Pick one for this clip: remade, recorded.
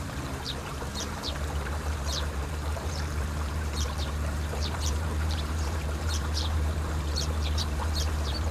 remade